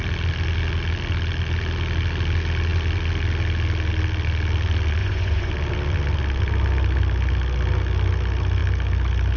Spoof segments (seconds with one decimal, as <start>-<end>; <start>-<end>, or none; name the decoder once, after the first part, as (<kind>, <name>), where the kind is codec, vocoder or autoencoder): 5.0-5.5 (vocoder, Vocos)